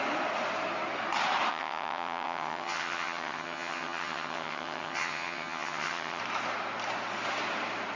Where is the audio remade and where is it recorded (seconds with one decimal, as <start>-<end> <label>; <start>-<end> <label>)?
0.0-1.5 recorded; 1.5-6.2 remade; 6.2-8.0 recorded